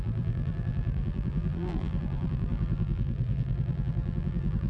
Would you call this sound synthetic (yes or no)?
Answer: yes